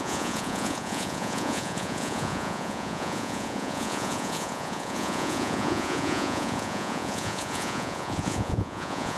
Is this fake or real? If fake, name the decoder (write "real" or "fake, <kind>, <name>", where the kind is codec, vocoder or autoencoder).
fake, vocoder, Vocos